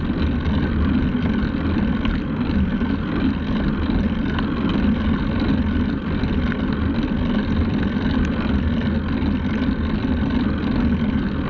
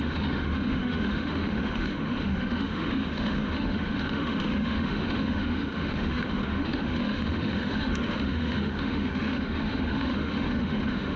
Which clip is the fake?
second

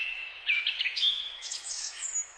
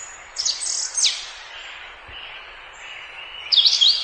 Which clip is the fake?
first